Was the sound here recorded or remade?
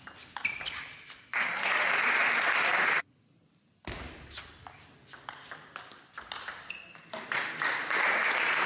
recorded